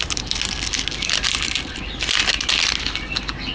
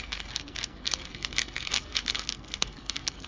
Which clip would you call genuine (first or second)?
first